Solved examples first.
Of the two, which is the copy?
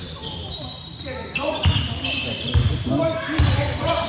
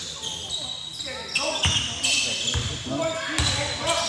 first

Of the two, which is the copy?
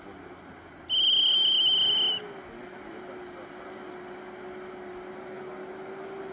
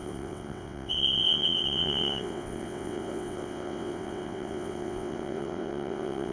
second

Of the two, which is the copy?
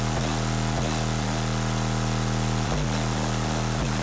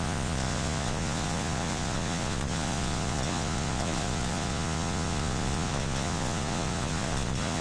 second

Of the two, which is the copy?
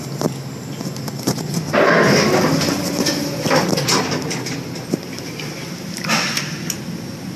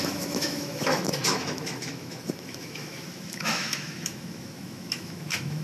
second